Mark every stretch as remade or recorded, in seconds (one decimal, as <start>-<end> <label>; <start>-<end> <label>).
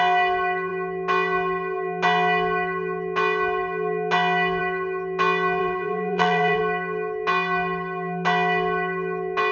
0.0-5.6 recorded; 5.6-6.6 remade; 6.6-9.5 recorded